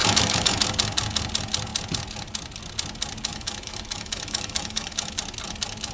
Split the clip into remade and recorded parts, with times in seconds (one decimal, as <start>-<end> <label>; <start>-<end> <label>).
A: 0.0-0.6 remade; 0.6-3.3 recorded; 3.3-5.1 remade; 5.1-5.9 recorded